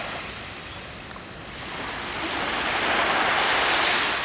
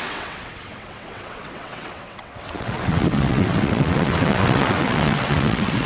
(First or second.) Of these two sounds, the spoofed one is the second